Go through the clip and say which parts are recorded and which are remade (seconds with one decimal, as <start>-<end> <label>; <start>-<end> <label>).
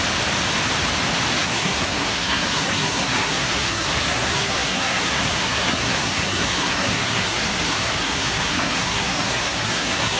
0.0-1.3 recorded; 1.3-10.2 remade